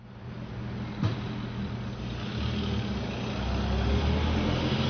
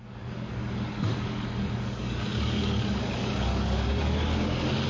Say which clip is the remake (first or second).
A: second